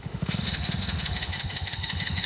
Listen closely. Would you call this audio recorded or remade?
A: remade